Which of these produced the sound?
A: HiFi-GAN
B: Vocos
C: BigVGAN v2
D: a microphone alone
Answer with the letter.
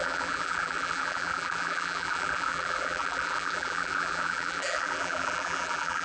C